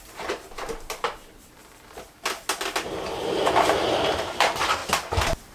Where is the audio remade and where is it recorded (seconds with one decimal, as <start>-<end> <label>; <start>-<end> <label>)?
0.0-1.6 remade; 1.6-3.2 recorded; 3.2-4.8 remade; 4.8-5.5 recorded